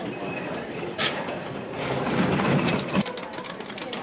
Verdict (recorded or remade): recorded